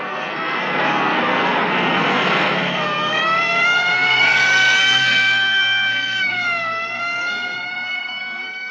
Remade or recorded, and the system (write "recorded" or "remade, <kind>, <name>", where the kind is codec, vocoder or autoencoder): remade, codec, SNAC